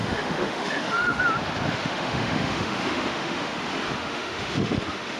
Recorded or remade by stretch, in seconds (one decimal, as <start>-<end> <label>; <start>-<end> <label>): 0.0-1.2 remade; 1.2-1.8 recorded; 1.8-3.6 remade; 3.6-4.0 recorded; 4.0-5.2 remade